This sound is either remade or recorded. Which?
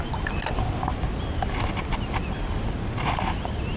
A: recorded